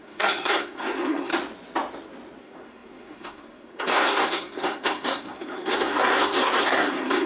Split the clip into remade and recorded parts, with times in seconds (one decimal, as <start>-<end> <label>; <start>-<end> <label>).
0.0-1.3 remade; 1.3-2.4 recorded; 2.4-7.3 remade